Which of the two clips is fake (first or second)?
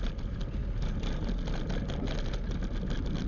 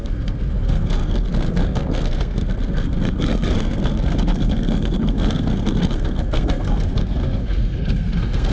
second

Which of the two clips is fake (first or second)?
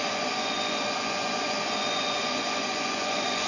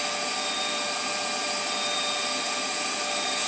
first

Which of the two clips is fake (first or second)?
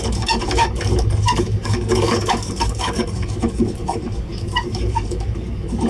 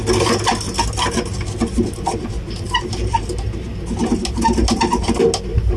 first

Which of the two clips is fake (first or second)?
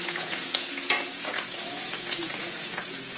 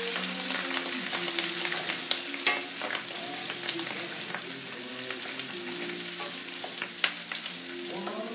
first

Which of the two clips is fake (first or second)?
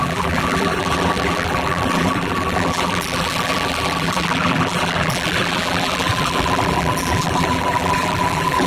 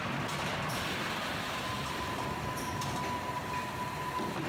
first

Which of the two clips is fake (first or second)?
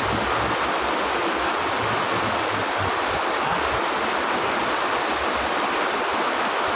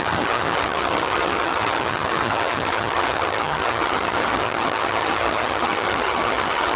second